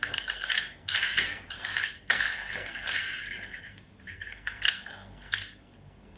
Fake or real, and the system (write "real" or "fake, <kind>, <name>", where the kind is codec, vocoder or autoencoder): fake, codec, SNAC